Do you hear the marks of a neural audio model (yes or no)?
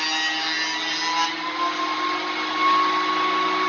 no